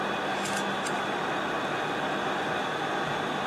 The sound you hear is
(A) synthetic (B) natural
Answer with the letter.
B